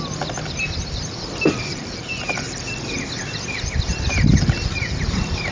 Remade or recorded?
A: recorded